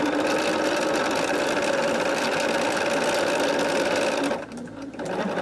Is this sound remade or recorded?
remade